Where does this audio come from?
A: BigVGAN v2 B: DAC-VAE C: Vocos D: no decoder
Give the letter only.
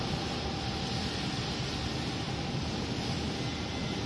D